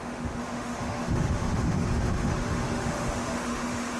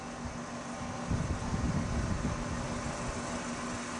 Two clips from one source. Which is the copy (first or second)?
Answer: first